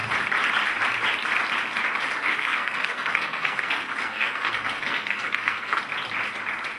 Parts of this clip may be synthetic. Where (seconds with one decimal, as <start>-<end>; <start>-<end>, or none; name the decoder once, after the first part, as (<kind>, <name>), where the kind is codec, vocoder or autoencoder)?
2.2-5.8 (codec, SNAC)